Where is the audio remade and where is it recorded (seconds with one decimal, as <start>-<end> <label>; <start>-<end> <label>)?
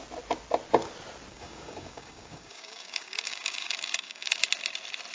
0.0-1.3 recorded; 1.3-4.4 remade; 4.4-5.1 recorded